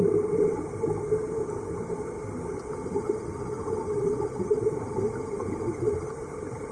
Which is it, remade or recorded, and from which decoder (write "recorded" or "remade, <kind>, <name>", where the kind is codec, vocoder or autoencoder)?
recorded